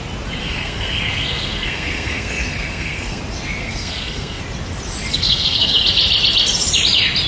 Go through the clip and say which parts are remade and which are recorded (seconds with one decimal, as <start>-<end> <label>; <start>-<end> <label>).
0.0-0.4 recorded; 0.4-3.2 remade; 3.2-3.6 recorded; 3.6-4.4 remade; 4.4-5.1 recorded; 5.1-5.7 remade; 5.7-7.3 recorded